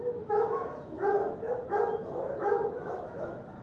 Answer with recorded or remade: remade